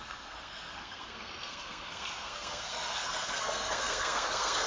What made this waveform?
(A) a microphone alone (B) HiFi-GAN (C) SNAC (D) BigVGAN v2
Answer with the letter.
C